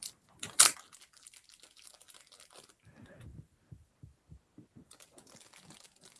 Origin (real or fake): fake